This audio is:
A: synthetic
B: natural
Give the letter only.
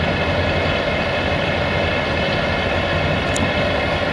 B